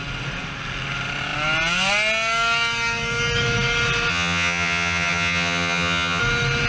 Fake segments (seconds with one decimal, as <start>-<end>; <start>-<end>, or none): 4.1-6.2